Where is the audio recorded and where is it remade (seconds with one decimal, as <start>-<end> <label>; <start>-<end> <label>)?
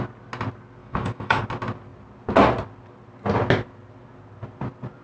0.0-0.8 recorded; 0.8-1.4 remade; 1.4-5.0 recorded